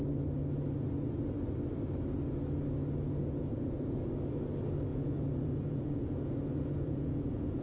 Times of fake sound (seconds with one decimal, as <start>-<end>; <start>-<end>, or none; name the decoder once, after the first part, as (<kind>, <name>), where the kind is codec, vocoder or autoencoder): 3.2-4.1 (vocoder, Vocos); 4.9-7.6